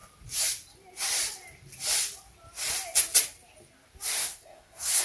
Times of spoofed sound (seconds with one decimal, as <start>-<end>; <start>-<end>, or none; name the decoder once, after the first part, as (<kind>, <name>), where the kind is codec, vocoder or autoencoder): 4.2-5.0 (codec, SNAC)